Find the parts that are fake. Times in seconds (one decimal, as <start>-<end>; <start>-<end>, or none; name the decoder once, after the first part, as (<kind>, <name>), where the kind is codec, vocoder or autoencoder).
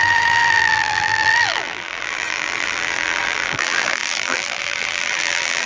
0.0-5.7 (vocoder, BigVGAN v2)